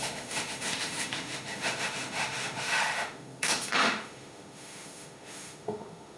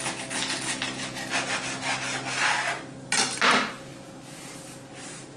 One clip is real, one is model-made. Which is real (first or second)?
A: second